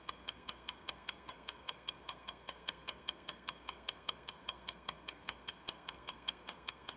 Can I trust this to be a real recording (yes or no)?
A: no